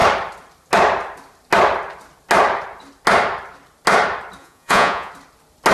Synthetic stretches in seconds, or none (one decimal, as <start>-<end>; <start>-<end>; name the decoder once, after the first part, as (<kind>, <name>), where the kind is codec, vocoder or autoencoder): 4.4-5.1 (vocoder, Vocos)